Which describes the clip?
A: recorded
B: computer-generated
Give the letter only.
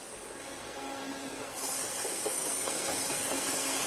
B